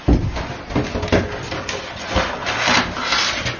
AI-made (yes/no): no